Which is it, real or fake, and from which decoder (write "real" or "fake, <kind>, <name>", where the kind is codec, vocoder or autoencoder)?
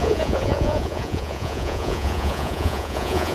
fake, vocoder, Vocos